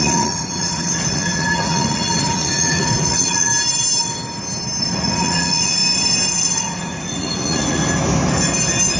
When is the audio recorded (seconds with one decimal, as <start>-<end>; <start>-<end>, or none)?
3.5-4.8; 5.8-6.3; 7.8-9.0

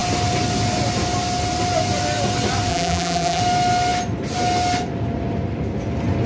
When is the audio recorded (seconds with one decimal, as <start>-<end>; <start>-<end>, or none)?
0.0-2.7; 3.4-6.3

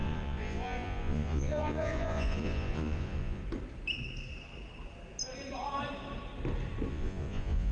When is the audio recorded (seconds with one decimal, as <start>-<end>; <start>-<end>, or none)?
3.4-6.9

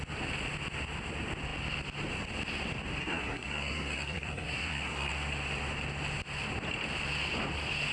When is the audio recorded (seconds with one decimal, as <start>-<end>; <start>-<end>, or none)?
0.0-3.0; 5.1-7.9

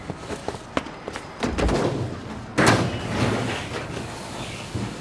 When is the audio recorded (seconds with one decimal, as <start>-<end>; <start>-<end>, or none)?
0.4-3.2

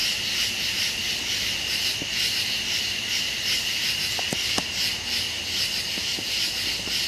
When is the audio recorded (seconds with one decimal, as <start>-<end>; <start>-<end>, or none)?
0.0-7.1

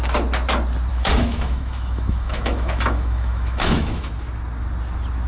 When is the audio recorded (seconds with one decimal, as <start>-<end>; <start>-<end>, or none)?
0.0-0.9; 4.1-5.3